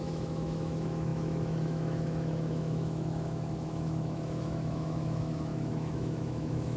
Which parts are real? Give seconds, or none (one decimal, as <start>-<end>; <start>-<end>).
none